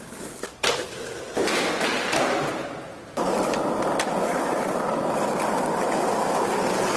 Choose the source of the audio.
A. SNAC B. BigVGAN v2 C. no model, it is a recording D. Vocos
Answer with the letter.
C